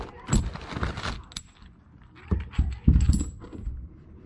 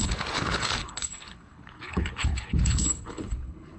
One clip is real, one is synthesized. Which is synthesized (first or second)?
second